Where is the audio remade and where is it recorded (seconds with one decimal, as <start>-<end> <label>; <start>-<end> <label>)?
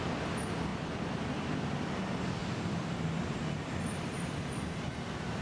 0.0-0.7 recorded; 0.7-2.0 remade; 2.0-2.4 recorded; 2.4-4.6 remade; 4.6-5.4 recorded